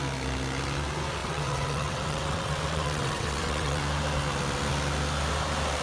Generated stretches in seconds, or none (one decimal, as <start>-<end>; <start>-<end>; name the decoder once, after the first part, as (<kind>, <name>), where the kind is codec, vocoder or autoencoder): 1.2-3.8 (vocoder, WaveNeXt)